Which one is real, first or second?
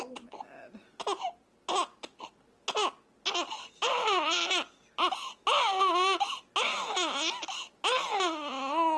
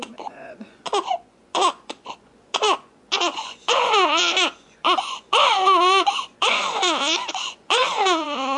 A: first